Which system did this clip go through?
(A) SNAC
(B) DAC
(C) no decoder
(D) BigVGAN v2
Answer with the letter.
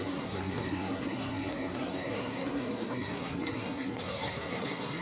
A